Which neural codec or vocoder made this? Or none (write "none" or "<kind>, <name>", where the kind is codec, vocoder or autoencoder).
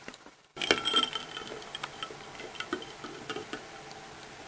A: none